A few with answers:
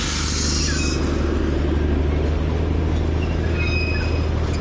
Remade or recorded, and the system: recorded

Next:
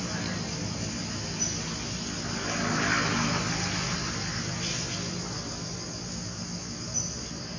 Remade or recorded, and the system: recorded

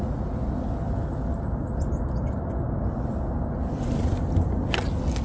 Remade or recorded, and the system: recorded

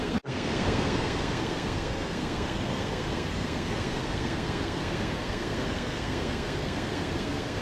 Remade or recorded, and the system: remade, codec, SNAC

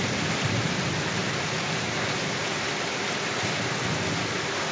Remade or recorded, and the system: recorded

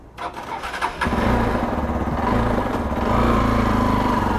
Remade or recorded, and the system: recorded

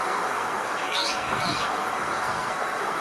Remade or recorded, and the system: remade, codec, SNAC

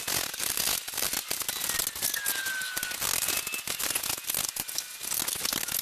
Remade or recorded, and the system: recorded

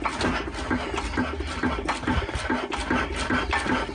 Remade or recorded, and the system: recorded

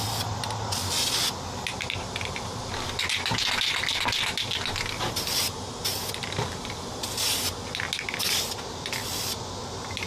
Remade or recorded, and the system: recorded